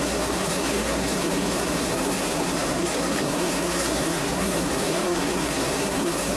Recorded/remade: remade